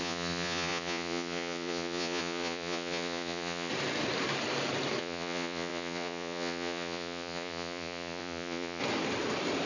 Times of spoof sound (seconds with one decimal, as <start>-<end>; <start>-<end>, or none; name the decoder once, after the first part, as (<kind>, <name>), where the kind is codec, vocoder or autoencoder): 0.0-3.7 (vocoder, Vocos); 5.0-8.8